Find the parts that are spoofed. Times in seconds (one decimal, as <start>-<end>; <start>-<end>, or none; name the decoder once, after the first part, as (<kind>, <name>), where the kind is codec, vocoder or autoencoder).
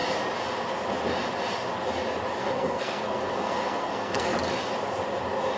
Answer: 2.4-4.3 (codec, SNAC)